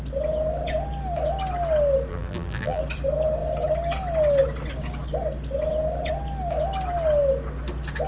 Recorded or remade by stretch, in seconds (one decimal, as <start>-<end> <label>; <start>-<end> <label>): 0.0-2.1 recorded; 2.1-2.8 remade; 2.8-8.1 recorded